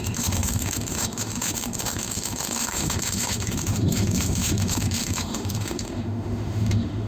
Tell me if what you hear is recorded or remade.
remade